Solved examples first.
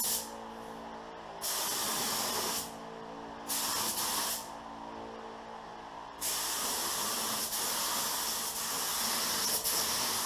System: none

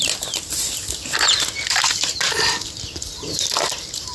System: none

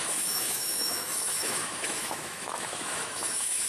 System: autoencoder, DAC-VAE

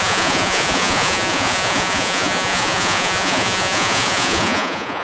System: vocoder, Vocos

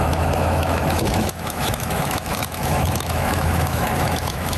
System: autoencoder, DAC-VAE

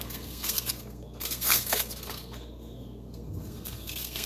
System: codec, SNAC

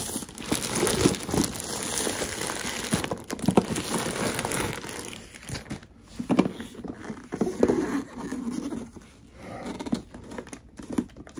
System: none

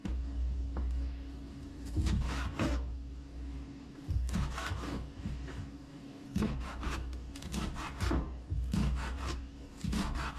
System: codec, DAC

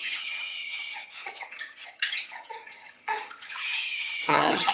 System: vocoder, HiFi-GAN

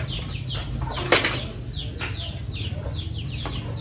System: none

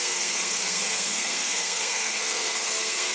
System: codec, SNAC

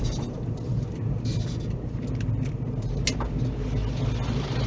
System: none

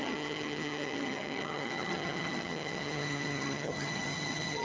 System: vocoder, HiFi-GAN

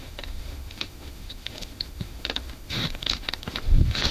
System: autoencoder, DAC-VAE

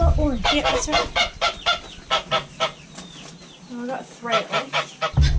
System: none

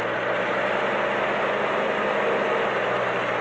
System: none